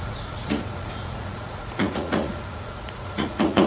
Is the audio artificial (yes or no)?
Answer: yes